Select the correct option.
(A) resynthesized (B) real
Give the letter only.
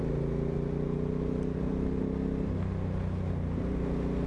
B